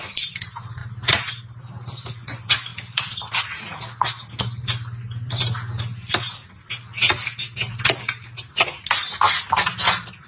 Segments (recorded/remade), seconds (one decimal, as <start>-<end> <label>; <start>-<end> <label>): 0.0-2.7 recorded; 2.7-3.3 remade; 3.3-10.3 recorded